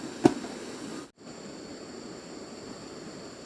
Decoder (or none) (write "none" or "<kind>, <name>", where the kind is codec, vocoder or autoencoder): none